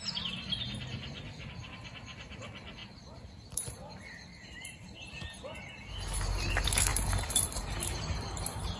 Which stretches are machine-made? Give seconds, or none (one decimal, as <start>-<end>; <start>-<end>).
2.8-5.2; 6.9-7.6